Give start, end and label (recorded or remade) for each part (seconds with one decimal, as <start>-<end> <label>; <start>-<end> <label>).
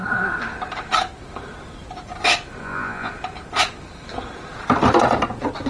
0.0-2.6 recorded; 2.6-3.1 remade; 3.1-5.7 recorded